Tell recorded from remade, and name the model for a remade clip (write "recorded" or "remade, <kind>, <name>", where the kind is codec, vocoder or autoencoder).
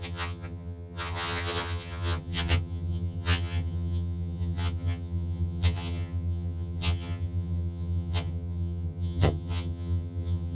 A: remade, vocoder, HiFi-GAN